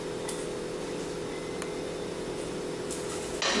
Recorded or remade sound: recorded